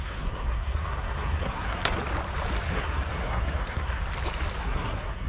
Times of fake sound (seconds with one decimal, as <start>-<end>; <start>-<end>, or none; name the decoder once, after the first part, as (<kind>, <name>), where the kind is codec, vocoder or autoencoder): 0.0-2.0 (codec, SNAC); 2.7-4.0; 4.6-5.3